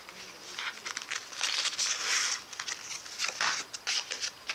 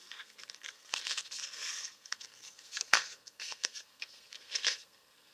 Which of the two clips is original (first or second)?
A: first